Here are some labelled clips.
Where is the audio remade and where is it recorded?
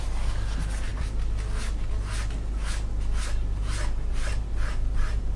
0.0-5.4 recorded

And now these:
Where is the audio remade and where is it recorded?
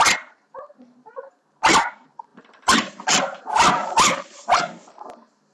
0.0-2.3 recorded; 2.3-4.6 remade; 4.6-5.5 recorded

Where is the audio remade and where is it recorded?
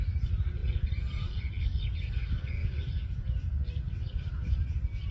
0.0-5.1 recorded